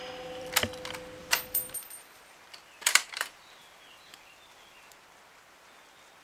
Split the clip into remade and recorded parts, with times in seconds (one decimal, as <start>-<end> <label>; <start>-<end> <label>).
0.0-0.5 remade; 0.5-1.2 recorded; 1.2-4.9 remade; 4.9-6.2 recorded